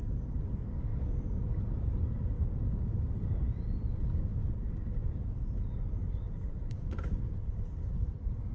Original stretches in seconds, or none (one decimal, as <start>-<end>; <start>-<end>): 0.0-6.0; 7.5-8.5